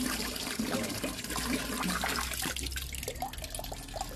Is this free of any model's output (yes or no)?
yes